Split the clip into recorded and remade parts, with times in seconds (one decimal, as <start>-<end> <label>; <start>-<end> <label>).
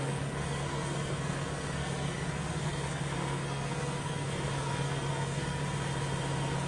0.0-5.6 remade; 5.6-6.7 recorded